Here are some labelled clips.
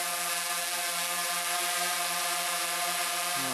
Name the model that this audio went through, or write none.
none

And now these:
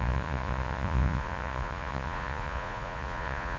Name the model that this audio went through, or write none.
vocoder, Vocos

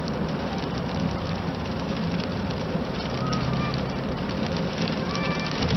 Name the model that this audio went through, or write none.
vocoder, BigVGAN v2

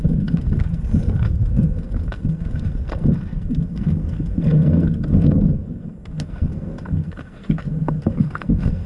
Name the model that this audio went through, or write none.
codec, SNAC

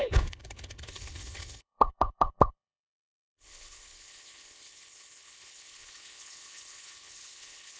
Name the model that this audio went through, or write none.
codec, HILCodec